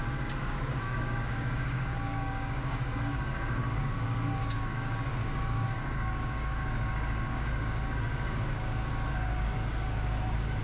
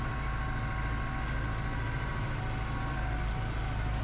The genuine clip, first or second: second